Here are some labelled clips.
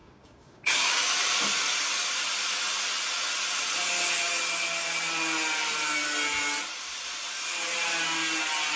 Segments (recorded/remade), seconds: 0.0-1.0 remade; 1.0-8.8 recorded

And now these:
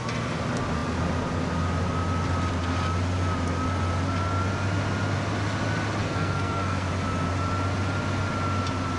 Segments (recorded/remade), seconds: 0.0-6.0 recorded; 6.0-6.9 remade; 6.9-9.0 recorded

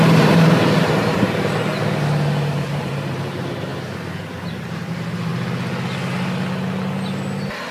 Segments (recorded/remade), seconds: 0.0-1.7 remade; 1.7-2.7 recorded; 2.7-3.7 remade; 3.7-4.2 recorded; 4.2-5.3 remade; 5.3-7.7 recorded

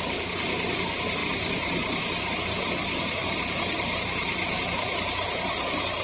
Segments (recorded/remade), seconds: 0.0-1.2 recorded; 1.2-2.7 remade; 2.7-3.2 recorded; 3.2-5.5 remade; 5.5-6.0 recorded

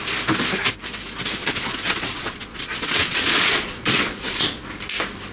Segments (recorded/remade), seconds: 0.0-1.4 recorded; 1.4-4.6 remade; 4.6-5.3 recorded

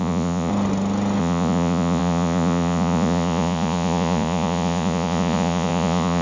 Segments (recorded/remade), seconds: 0.0-0.5 remade; 0.5-1.2 recorded; 1.2-6.2 remade

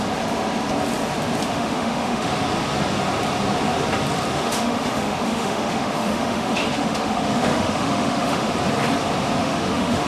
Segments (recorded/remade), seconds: 0.0-1.5 recorded; 1.5-2.3 remade; 2.3-4.3 recorded; 4.3-8.5 remade; 8.5-9.4 recorded; 9.4-10.1 remade